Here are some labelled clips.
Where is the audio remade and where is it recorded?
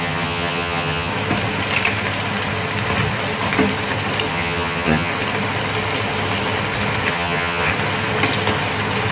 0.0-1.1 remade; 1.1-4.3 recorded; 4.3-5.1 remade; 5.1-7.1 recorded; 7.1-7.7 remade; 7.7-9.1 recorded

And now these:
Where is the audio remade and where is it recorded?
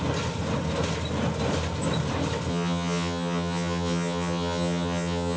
0.0-2.5 recorded; 2.5-5.4 remade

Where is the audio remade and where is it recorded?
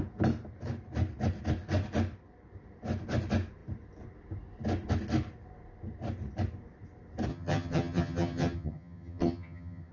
0.0-7.3 recorded; 7.3-9.9 remade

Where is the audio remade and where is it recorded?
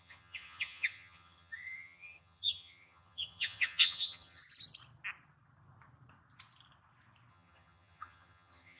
0.0-4.4 remade; 4.4-7.3 recorded; 7.3-8.8 remade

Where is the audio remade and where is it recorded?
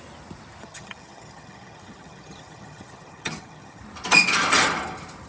0.0-0.6 recorded; 0.6-3.8 remade; 3.8-5.3 recorded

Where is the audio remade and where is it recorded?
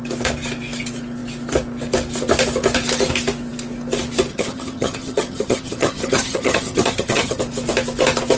0.0-4.3 recorded; 4.3-7.4 remade; 7.4-8.4 recorded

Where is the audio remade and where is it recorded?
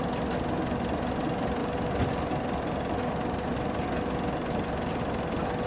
0.0-5.7 recorded